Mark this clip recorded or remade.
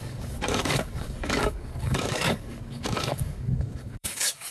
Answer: remade